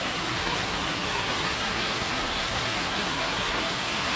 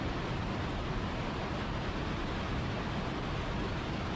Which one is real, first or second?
second